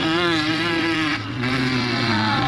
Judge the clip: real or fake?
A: fake